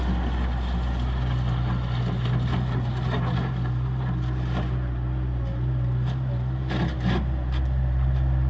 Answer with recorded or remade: recorded